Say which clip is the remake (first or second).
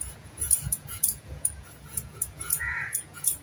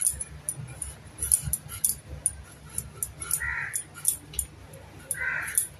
first